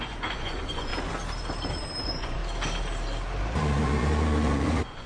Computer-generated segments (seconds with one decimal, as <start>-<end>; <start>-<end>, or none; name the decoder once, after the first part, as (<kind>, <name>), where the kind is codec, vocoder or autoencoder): 0.0-0.9 (vocoder, Vocos); 2.0-2.4; 3.6-5.1